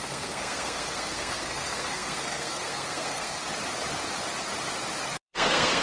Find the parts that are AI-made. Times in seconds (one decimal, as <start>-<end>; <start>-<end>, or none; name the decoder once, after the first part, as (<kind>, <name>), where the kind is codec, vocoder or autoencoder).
0.0-3.4 (codec, SNAC); 5.2-5.8

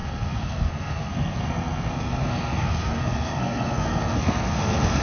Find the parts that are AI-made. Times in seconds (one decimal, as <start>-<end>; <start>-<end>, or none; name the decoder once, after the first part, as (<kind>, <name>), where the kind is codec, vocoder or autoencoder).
0.0-5.0 (codec, SNAC)

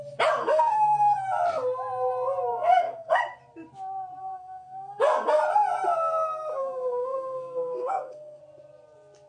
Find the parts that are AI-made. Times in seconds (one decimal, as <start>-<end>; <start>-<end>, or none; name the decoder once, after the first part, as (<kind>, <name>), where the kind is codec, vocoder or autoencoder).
0.4-1.2 (codec, SNAC); 2.5-3.2; 4.2-5.5; 6.5-8.4